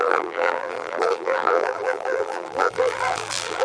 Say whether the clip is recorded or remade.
remade